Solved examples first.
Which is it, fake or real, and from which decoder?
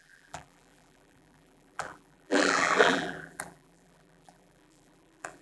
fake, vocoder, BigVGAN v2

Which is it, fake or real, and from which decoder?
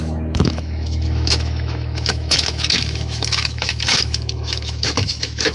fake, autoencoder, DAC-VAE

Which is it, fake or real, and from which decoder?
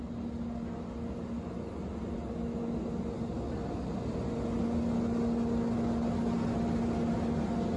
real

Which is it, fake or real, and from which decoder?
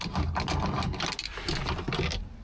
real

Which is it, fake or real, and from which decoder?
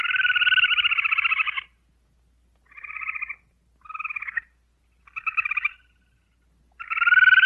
real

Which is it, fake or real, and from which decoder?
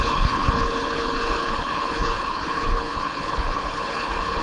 fake, codec, HILCodec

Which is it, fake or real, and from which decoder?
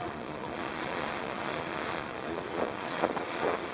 fake, vocoder, Vocos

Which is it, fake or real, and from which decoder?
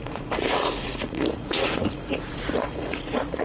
fake, vocoder, Vocos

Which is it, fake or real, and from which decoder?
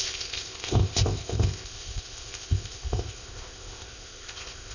fake, codec, ZipCodec